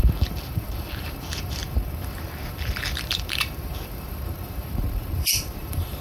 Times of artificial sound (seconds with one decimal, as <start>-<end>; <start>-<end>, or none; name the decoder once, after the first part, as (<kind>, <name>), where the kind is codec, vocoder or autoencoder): 0.0-6.0 (vocoder, BigVGAN v2)